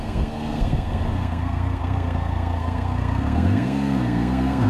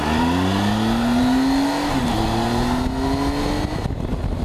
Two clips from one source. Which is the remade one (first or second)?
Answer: first